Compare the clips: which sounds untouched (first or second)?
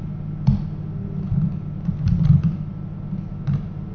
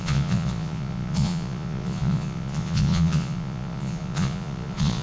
first